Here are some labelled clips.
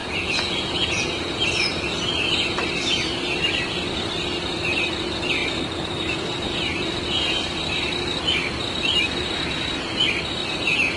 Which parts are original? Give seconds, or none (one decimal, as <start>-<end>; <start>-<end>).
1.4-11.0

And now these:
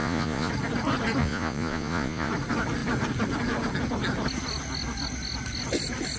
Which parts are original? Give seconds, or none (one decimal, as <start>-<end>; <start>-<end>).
0.5-1.2; 2.3-6.2

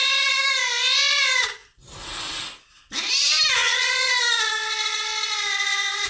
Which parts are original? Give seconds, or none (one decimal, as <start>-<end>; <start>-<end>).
0.0-3.6; 4.1-6.1

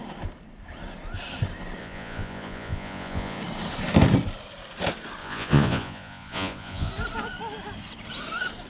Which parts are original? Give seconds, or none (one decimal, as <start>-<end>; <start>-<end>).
0.0-1.8; 3.4-5.2; 6.9-8.7

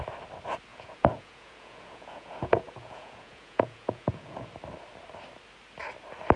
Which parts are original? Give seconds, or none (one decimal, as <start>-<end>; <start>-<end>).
0.0-0.7; 4.5-6.4